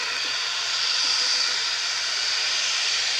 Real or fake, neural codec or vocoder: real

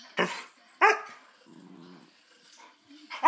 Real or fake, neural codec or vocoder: real